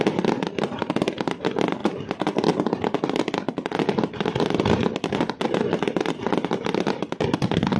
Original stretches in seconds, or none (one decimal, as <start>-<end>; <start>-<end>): 0.0-7.8